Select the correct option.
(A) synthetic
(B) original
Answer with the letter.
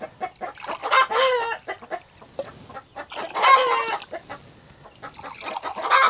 B